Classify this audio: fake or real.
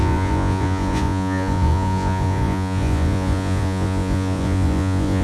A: fake